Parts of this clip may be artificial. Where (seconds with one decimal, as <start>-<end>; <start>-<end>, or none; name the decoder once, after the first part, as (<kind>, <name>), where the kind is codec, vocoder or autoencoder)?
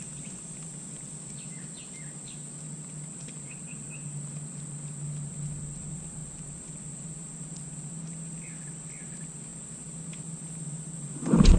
none